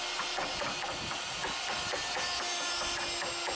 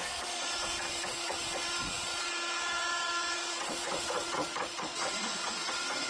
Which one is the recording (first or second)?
first